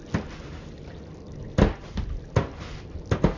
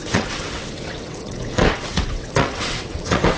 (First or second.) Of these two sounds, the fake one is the second